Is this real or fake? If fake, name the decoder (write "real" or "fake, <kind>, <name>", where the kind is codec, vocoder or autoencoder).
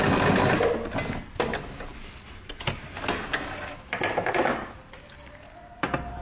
real